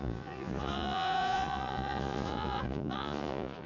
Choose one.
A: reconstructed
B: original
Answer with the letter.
A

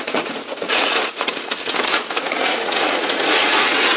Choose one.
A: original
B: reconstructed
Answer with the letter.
B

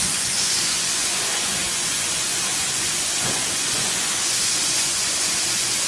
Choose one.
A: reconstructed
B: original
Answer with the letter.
A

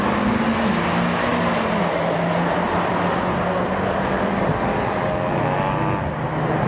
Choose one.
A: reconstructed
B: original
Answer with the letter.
B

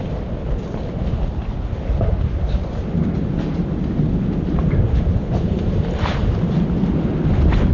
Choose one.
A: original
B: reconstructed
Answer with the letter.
A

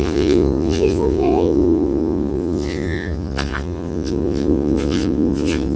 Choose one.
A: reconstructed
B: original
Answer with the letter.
A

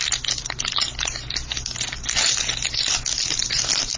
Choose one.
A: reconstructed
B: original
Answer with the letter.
B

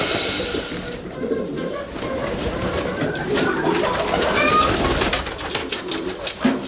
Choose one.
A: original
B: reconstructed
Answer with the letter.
A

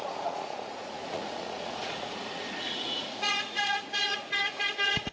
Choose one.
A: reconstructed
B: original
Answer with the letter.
A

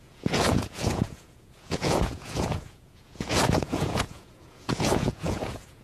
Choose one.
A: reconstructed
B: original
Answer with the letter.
A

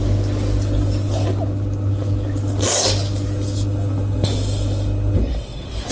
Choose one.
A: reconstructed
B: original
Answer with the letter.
B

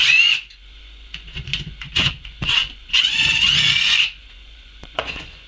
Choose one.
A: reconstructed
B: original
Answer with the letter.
A